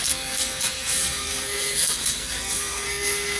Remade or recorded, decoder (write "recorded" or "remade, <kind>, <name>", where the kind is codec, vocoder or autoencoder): remade, codec, SNAC